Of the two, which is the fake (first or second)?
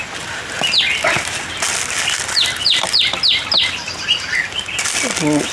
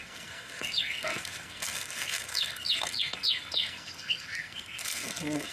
second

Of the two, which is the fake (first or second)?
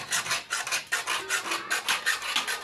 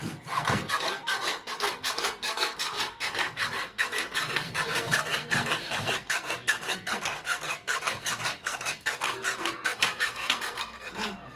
second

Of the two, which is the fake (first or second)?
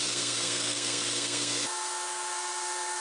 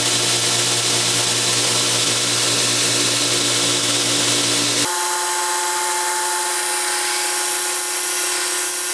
first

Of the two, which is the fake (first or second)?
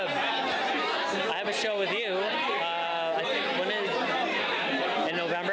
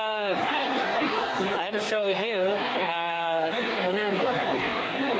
second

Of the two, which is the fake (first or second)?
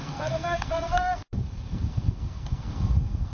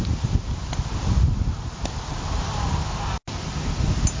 first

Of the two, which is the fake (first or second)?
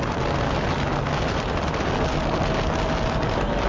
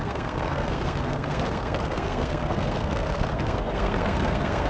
second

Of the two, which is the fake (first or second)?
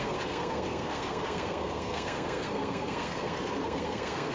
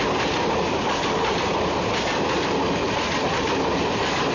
first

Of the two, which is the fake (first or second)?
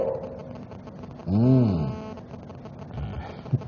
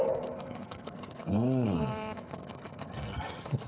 second